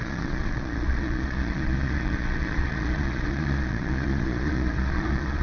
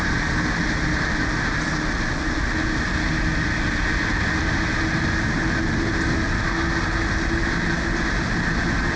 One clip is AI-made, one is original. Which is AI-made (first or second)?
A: first